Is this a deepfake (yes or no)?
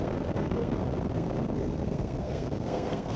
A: yes